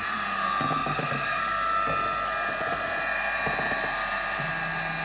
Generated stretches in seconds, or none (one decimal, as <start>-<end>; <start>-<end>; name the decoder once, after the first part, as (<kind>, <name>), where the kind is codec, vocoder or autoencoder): 0.8-1.4 (codec, SNAC)